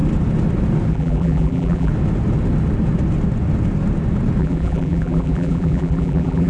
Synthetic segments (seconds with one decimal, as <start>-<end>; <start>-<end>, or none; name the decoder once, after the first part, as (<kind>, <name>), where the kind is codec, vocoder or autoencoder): 0.9-1.9 (vocoder, BigVGAN v2); 4.4-6.5